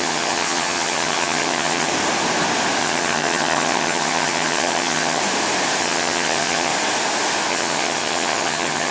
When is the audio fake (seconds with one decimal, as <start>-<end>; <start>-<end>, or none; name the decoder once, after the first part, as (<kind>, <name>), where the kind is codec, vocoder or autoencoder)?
0.0-1.9 (vocoder, HiFi-GAN); 2.8-5.2; 5.8-6.7; 7.5-8.9